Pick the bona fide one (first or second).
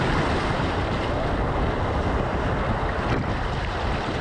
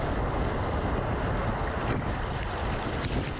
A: second